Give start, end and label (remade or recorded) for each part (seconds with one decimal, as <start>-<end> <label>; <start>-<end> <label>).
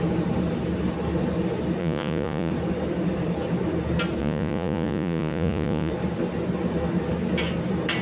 0.0-1.8 recorded; 1.8-2.5 remade; 2.5-4.2 recorded; 4.2-5.9 remade; 5.9-8.0 recorded